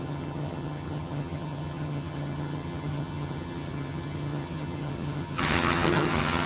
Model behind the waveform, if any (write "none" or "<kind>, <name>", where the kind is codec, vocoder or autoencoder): vocoder, HiFi-GAN